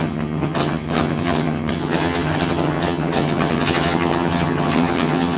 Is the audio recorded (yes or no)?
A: no